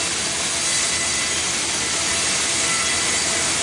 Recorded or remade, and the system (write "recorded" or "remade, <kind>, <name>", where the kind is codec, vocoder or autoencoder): recorded